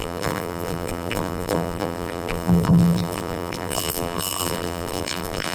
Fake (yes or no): yes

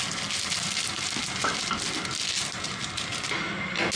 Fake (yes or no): no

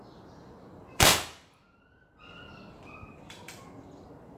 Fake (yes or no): yes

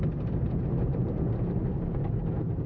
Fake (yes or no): yes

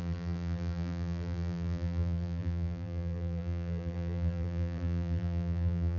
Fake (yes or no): yes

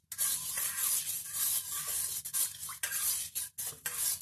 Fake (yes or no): no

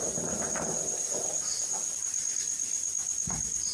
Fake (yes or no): no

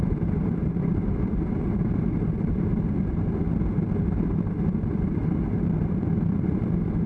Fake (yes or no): yes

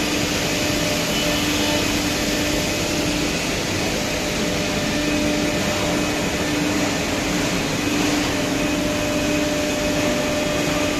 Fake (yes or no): no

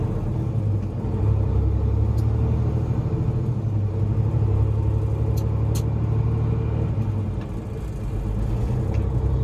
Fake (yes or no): no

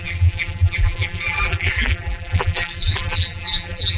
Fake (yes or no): yes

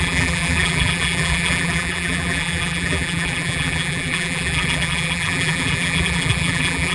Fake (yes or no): yes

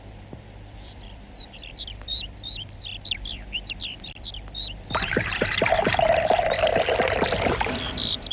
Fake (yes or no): yes